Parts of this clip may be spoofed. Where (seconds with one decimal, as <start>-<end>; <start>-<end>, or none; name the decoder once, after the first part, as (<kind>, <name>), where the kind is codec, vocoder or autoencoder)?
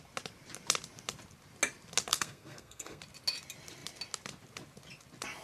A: 2.1-3.0 (codec, SNAC)